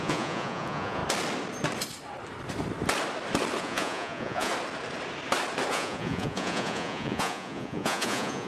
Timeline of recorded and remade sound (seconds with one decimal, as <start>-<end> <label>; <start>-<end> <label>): 0.0-1.0 remade; 1.0-3.6 recorded; 3.6-4.5 remade; 4.5-5.7 recorded; 5.7-8.5 remade